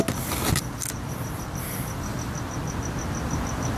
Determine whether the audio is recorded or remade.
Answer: recorded